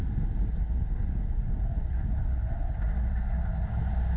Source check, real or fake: real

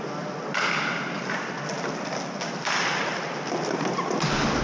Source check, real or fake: real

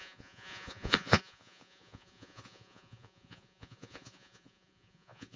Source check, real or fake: fake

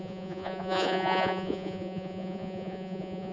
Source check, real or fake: fake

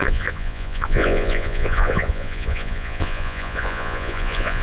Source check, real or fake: fake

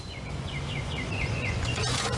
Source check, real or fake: fake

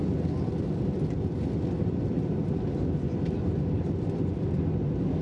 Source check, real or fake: real